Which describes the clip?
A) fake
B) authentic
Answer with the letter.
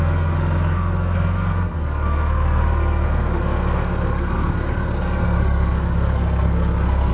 A